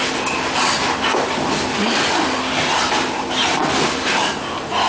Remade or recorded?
recorded